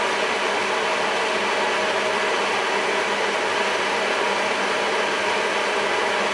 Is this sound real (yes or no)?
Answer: yes